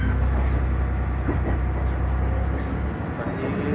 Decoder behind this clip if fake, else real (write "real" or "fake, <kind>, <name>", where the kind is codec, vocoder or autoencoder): real